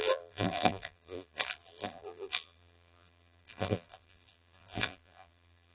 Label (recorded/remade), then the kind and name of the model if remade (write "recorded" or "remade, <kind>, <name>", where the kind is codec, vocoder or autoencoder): remade, vocoder, BigVGAN v2